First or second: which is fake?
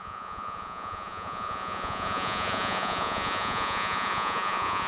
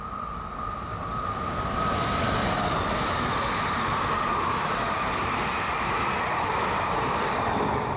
first